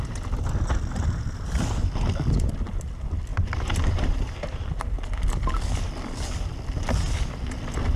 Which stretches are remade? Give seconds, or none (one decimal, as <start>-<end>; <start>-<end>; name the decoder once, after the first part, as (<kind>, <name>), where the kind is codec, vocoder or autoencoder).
3.3-4.6 (vocoder, BigVGAN v2)